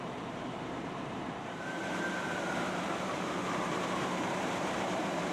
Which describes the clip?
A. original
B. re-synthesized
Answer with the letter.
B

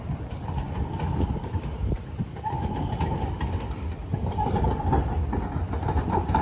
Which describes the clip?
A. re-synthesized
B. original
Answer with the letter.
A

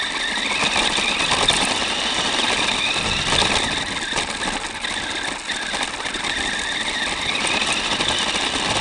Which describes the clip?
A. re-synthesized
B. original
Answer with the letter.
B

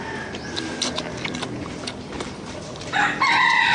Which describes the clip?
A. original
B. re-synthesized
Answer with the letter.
B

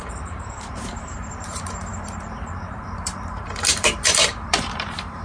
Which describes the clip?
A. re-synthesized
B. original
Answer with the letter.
A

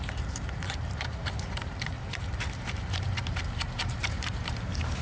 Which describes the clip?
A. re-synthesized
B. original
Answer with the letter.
A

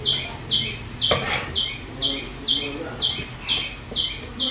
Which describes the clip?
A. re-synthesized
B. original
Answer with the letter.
B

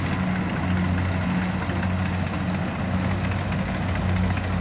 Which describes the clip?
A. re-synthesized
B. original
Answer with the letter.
B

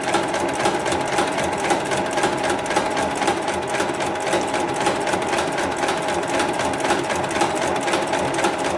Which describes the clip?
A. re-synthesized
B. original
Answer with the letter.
B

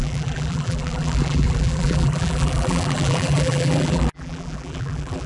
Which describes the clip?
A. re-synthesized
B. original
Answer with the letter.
A